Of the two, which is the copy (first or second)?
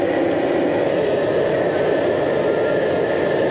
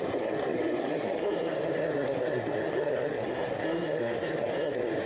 second